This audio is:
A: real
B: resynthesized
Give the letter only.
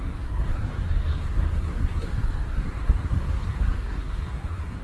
B